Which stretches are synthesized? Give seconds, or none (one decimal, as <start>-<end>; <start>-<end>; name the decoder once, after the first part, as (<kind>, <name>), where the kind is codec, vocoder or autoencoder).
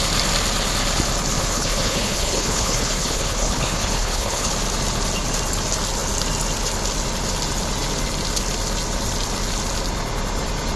1.4-4.5 (codec, HILCodec)